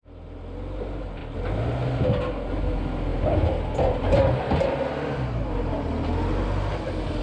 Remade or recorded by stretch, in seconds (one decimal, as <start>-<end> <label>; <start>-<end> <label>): 0.0-7.2 recorded